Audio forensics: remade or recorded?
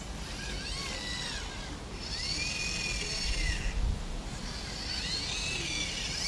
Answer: recorded